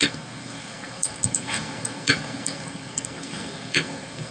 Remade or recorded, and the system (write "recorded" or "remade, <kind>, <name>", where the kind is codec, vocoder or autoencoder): remade, codec, SNAC